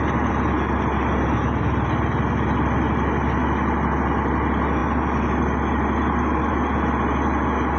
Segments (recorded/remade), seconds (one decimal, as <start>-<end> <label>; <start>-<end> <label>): 0.0-7.8 recorded